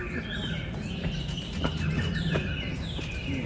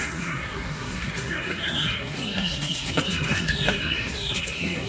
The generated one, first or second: second